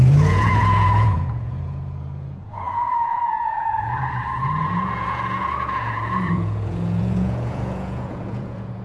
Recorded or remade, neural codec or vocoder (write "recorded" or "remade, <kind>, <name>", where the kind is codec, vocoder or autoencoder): remade, vocoder, Vocos